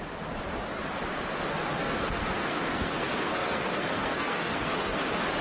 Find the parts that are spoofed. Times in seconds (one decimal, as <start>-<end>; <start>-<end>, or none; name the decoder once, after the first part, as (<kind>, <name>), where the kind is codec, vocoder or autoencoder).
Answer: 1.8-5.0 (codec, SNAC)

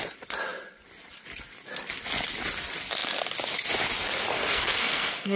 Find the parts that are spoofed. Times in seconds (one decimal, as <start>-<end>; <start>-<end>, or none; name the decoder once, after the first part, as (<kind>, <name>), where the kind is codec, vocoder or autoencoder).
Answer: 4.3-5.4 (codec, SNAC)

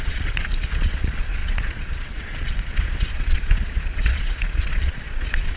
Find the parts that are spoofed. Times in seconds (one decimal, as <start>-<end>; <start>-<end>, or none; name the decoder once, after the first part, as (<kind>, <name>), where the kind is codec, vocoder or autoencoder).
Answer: 0.0-5.6 (vocoder, Vocos)

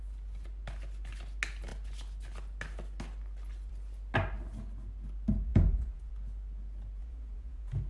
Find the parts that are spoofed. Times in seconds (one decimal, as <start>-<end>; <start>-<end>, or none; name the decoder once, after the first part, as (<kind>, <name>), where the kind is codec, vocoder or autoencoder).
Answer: 5.5-6.1 (vocoder, Vocos); 7.0-7.9

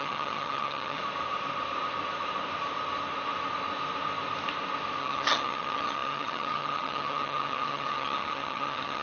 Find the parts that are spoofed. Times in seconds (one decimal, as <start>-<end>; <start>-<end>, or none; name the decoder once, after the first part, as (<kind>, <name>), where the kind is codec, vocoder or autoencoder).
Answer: 0.0-1.0 (vocoder, HiFi-GAN); 5.0-9.0

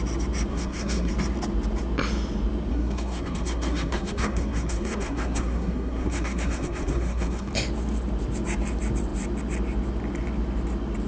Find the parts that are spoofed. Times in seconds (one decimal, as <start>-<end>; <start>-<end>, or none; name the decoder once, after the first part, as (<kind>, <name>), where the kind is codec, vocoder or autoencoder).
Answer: 0.5-1.1 (codec, SNAC); 2.7-7.5

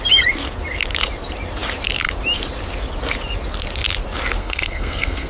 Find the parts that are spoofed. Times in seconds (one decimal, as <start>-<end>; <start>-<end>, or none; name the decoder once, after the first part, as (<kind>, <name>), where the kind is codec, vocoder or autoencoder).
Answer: 4.4-5.3 (codec, SNAC)